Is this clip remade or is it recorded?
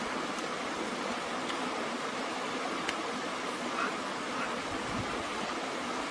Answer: recorded